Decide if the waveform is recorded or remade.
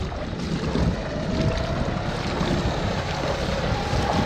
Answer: recorded